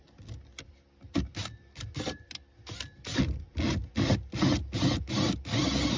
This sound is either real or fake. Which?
real